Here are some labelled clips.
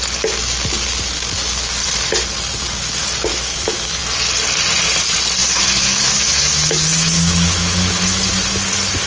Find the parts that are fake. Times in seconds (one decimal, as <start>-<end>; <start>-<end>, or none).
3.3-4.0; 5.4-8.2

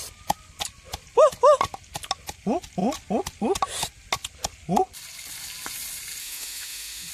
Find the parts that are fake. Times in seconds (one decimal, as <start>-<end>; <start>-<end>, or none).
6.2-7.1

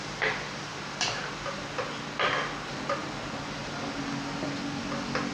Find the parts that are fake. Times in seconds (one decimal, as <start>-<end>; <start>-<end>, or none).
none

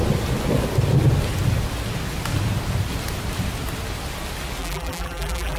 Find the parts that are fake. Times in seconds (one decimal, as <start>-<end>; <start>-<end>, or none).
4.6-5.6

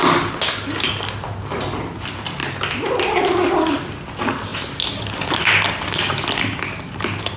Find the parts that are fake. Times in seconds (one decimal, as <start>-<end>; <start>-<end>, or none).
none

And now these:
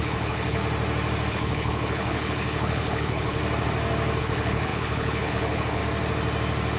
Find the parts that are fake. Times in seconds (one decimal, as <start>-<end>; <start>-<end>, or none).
0.0-0.6; 1.3-3.4; 4.2-5.8

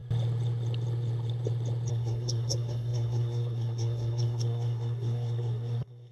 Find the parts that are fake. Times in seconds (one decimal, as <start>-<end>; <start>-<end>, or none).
1.9-6.1

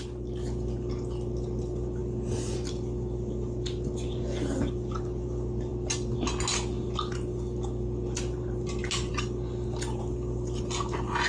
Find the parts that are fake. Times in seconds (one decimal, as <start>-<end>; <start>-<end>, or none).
none